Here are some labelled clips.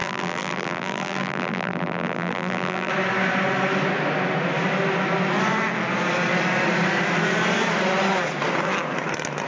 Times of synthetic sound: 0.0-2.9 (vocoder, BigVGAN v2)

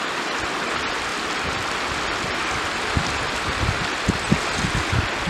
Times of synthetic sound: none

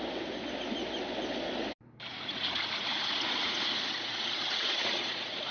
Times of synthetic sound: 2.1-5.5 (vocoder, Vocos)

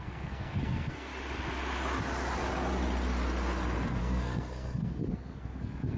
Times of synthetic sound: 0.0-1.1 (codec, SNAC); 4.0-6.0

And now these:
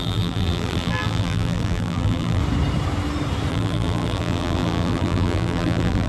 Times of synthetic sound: 0.0-2.4 (vocoder, BigVGAN v2); 3.5-6.1